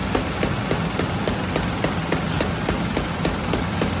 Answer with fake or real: real